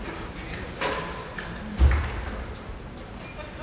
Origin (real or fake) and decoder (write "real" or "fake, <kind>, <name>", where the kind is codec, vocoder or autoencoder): real